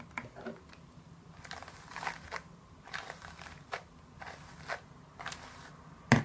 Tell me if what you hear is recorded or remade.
recorded